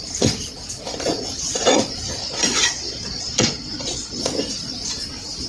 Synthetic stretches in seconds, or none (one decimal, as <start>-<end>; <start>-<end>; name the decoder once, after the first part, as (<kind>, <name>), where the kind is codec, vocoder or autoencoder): 2.2-4.2 (vocoder, Vocos)